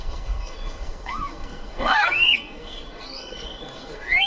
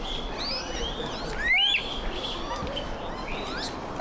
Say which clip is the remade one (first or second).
first